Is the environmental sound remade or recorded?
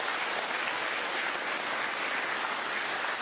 recorded